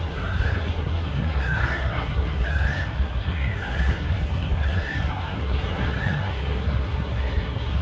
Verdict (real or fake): fake